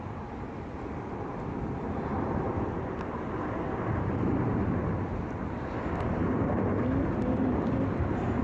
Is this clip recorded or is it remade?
remade